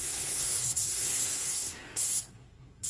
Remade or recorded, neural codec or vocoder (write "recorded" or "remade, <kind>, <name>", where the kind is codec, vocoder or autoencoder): remade, codec, SNAC